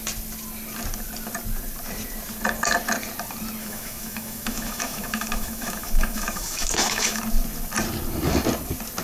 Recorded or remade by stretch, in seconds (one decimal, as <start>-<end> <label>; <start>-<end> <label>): 0.0-3.6 recorded; 3.6-7.2 remade; 7.2-9.0 recorded